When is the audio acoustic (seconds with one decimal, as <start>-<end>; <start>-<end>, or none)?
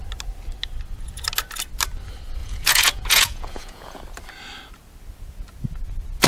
0.0-2.4; 4.0-6.3